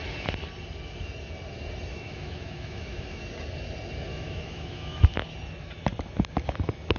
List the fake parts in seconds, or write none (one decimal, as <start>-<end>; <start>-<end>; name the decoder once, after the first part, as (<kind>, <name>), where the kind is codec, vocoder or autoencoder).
1.9-3.2 (autoencoder, DAC-VAE); 4.1-5.0